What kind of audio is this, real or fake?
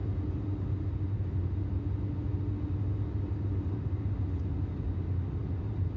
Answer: real